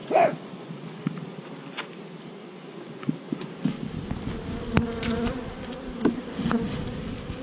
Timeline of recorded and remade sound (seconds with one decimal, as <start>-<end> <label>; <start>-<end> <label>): 0.0-1.0 remade; 1.0-2.4 recorded; 2.4-3.5 remade; 3.5-7.4 recorded